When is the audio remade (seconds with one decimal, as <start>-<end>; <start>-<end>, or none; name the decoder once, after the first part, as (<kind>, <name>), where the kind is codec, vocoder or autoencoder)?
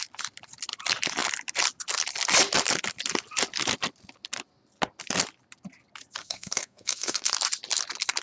6.2-7.3 (codec, SNAC)